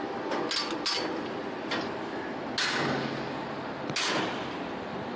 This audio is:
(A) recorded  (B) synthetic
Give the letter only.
A